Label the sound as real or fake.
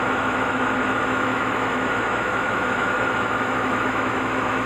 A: fake